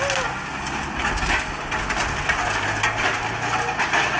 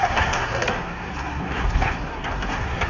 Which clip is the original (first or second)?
first